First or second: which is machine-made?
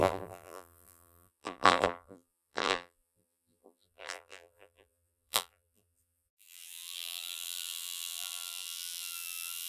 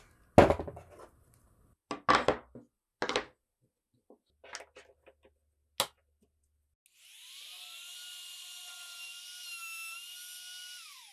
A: first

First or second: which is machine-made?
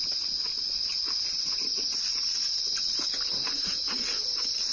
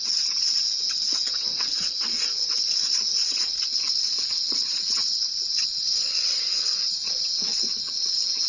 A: second